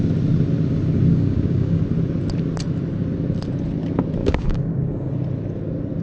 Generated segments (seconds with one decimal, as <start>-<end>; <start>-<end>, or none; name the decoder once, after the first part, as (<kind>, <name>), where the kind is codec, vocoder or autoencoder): 1.1-1.8 (codec, DAC); 4.2-5.1